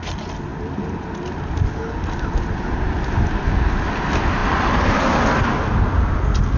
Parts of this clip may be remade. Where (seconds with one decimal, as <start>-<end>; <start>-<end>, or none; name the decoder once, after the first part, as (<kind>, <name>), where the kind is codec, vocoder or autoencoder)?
none